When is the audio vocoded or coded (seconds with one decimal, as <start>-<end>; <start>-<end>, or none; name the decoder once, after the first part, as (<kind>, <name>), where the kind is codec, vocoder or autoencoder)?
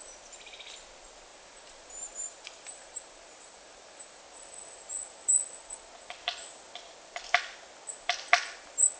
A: 1.3-4.2 (vocoder, BigVGAN v2)